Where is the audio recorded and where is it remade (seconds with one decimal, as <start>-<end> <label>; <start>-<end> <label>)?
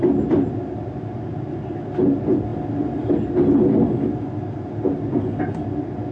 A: 0.0-6.1 recorded